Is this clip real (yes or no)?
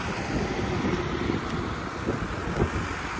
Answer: yes